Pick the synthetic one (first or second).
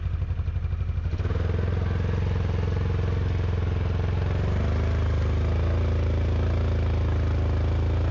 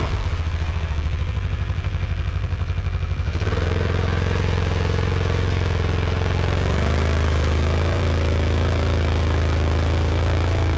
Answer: second